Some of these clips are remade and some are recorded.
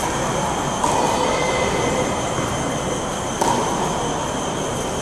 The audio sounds recorded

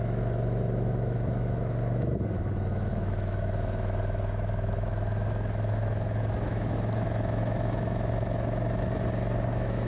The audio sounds remade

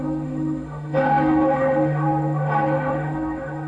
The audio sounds remade